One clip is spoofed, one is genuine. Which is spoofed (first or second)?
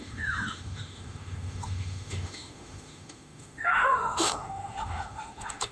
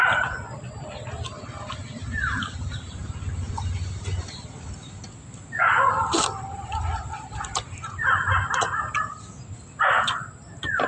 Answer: first